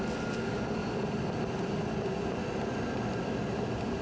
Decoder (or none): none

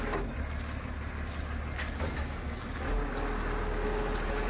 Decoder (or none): none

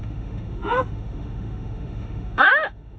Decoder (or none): autoencoder, DAC-VAE